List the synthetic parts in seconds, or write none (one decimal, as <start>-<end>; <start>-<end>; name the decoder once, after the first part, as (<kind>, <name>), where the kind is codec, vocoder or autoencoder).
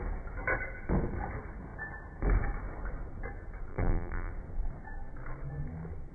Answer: 3.7-4.3 (vocoder, BigVGAN v2)